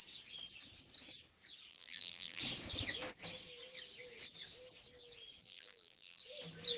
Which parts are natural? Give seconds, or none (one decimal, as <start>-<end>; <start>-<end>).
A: 0.0-1.7; 2.4-5.4; 6.2-6.8